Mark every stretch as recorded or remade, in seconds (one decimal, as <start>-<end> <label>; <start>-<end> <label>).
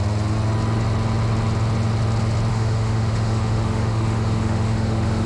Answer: 0.0-2.5 recorded; 2.5-5.3 remade